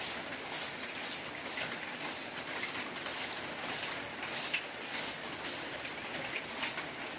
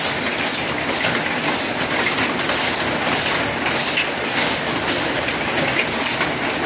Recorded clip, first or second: second